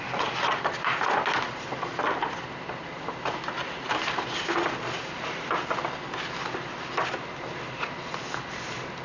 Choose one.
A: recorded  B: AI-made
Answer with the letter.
A